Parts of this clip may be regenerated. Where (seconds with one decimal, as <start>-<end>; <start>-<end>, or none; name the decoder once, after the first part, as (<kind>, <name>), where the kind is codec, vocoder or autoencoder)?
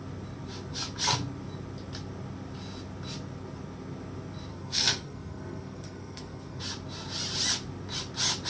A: 4.5-6.6 (codec, SNAC)